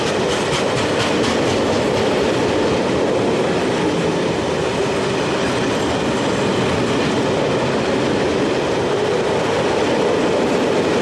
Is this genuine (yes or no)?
yes